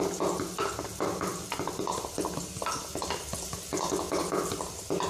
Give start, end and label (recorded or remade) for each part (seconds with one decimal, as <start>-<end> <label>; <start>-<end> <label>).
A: 0.0-5.1 remade